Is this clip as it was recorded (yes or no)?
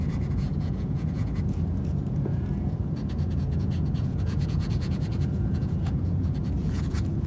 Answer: no